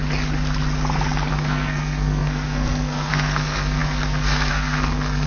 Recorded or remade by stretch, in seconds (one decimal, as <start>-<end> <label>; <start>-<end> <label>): 0.0-1.3 recorded; 1.3-5.3 remade

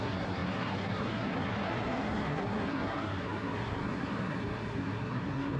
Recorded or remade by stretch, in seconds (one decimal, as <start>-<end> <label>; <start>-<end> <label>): 0.0-5.6 remade

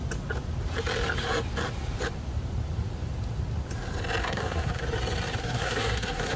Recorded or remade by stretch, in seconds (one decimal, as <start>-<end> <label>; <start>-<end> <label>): 0.0-4.2 recorded; 4.2-4.8 remade; 4.8-5.4 recorded; 5.4-6.4 remade